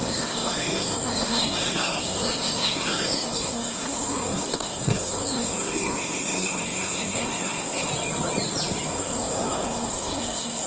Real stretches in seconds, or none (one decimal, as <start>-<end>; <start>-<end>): 7.9-8.9